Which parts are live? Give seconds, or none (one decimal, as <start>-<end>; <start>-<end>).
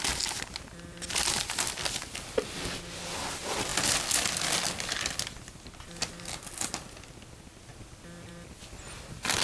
0.0-9.4